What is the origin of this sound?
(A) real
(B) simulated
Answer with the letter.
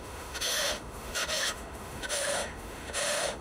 B